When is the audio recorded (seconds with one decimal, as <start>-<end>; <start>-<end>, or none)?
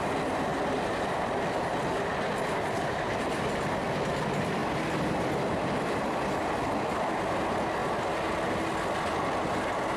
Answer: 0.0-0.5; 1.4-4.6; 6.5-10.0